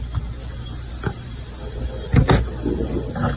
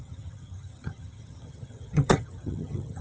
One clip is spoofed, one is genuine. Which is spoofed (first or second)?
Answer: second